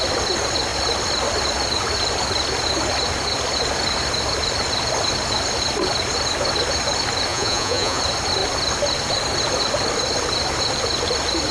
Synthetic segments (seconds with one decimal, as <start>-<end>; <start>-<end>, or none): 7.3-8.0